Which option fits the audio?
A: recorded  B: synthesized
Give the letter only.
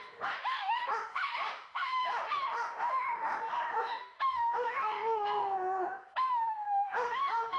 B